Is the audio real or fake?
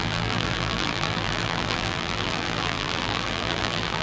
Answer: fake